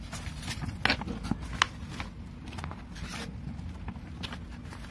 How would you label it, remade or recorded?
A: recorded